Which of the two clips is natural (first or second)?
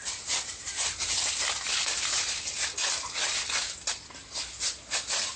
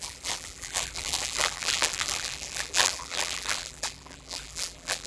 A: first